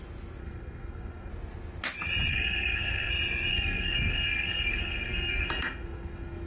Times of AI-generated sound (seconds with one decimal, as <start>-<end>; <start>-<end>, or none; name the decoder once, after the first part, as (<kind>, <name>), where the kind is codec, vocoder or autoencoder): 0.4-1.3 (codec, SNAC); 2.3-3.1; 3.5-6.5